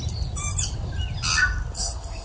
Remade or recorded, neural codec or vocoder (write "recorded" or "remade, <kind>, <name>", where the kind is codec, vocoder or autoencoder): recorded